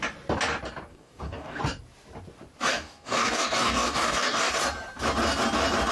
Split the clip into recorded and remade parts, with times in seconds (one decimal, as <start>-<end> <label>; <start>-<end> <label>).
0.0-0.9 recorded; 0.9-1.6 remade; 1.6-2.7 recorded; 2.7-4.5 remade; 4.5-5.9 recorded